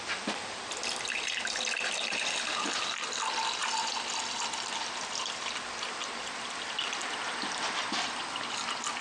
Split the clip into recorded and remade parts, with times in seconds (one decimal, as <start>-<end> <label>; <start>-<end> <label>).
0.0-9.0 recorded